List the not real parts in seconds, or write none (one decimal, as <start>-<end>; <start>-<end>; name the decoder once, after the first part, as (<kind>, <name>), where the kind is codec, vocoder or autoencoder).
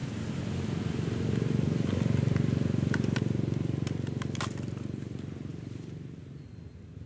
none